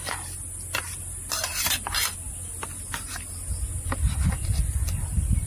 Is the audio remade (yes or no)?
no